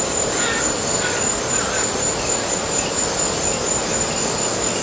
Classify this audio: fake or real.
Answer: real